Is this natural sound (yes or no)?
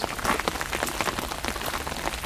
yes